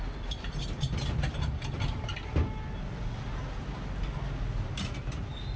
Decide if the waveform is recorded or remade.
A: recorded